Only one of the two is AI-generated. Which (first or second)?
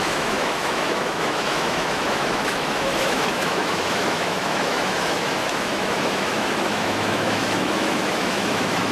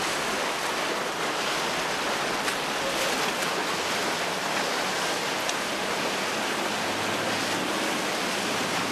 first